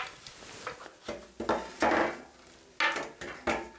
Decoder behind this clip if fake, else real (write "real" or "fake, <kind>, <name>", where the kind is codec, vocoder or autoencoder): real